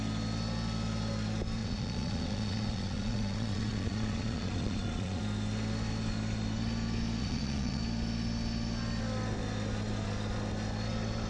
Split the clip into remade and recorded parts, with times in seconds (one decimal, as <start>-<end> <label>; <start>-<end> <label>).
0.0-1.6 recorded; 1.6-5.2 remade; 5.2-7.2 recorded; 7.2-7.8 remade; 7.8-11.3 recorded